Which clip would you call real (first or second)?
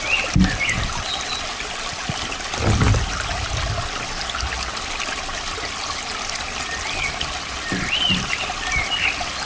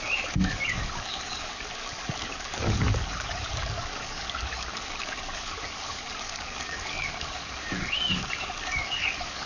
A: first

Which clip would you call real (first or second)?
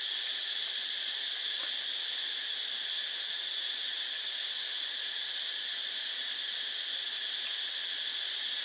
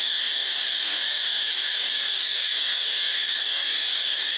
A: first